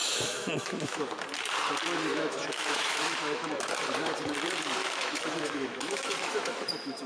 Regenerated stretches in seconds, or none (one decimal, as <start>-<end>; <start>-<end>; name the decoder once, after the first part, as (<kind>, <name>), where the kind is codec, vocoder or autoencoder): 0.0-1.0 (autoencoder, DAC-VAE); 2.1-3.5; 4.8-7.1